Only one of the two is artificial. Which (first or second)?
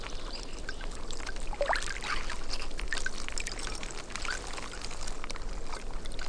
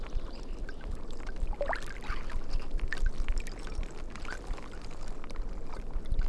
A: second